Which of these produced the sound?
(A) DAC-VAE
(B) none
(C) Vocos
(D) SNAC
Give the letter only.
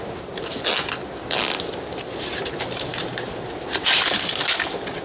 B